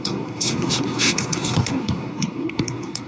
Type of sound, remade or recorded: remade